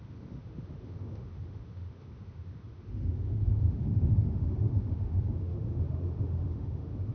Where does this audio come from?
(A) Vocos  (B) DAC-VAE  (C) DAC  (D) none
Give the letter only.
B